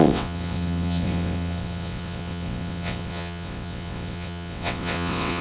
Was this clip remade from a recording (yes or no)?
yes